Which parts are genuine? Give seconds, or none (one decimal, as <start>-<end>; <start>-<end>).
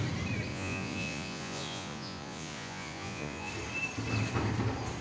0.0-0.5; 3.5-5.0